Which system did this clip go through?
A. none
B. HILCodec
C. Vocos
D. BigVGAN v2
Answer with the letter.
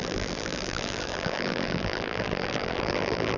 D